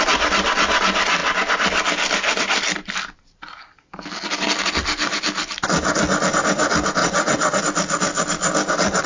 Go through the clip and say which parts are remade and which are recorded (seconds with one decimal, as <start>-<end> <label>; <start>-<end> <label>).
0.0-7.0 recorded; 7.0-7.6 remade; 7.6-9.1 recorded